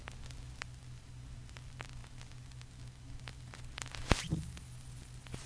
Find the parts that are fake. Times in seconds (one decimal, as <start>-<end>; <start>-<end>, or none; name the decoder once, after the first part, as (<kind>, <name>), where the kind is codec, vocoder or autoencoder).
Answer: none